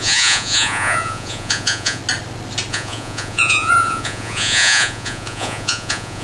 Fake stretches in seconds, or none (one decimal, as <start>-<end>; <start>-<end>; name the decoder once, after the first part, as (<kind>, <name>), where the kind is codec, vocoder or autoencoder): 0.0-2.0 (vocoder, Vocos); 2.7-6.2